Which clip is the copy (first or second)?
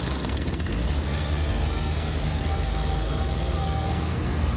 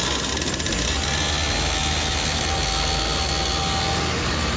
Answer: first